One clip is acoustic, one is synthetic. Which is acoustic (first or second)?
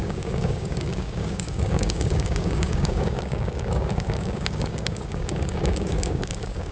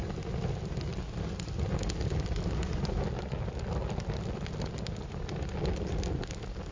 second